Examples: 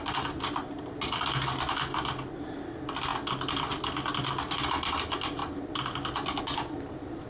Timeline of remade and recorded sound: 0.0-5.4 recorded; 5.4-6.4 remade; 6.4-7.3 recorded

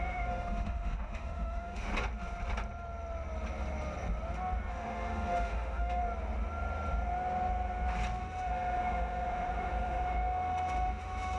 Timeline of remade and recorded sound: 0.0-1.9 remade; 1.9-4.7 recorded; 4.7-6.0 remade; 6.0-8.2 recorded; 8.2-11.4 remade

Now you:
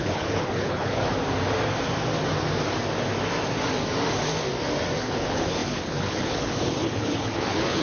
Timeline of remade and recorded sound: 0.0-1.0 remade; 1.0-5.0 recorded; 5.0-7.8 remade

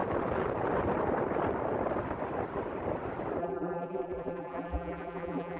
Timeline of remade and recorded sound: 0.0-3.4 recorded; 3.4-5.6 remade